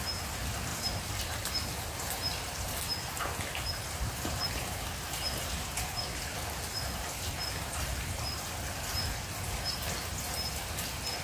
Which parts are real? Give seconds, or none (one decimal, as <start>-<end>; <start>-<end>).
0.0-11.2